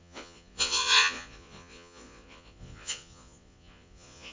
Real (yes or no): no